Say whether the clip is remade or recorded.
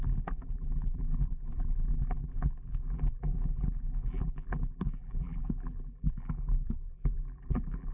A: remade